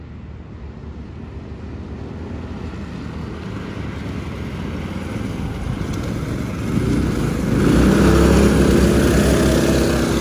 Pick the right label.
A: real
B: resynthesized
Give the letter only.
A